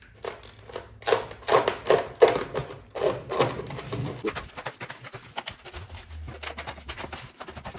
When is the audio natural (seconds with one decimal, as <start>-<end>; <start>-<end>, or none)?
0.0-2.6; 4.9-7.8